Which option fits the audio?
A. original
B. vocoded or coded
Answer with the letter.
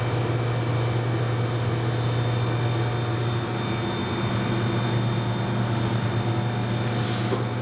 A